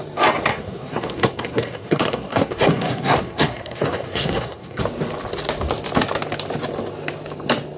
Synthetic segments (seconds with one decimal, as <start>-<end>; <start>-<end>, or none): 0.5-4.8